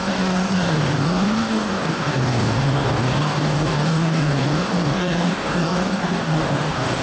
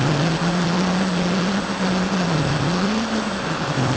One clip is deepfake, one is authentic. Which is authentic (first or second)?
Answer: second